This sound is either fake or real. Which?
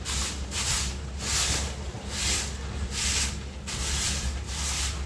real